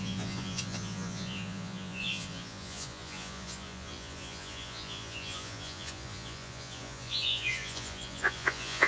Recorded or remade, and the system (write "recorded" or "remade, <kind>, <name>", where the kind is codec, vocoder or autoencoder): remade, vocoder, Vocos